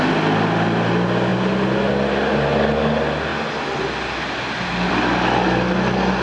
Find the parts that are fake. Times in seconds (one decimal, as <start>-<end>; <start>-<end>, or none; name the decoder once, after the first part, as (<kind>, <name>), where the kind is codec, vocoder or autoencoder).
none